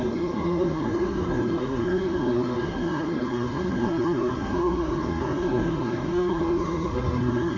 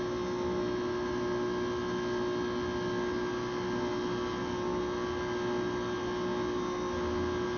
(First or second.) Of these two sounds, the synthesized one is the first